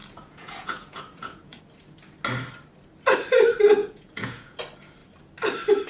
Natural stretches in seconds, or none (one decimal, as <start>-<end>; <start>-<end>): 1.6-3.8; 4.6-5.9